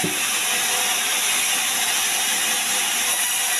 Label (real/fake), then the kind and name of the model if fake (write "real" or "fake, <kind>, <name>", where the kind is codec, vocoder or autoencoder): real